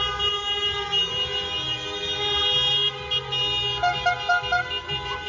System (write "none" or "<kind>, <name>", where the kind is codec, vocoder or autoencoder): none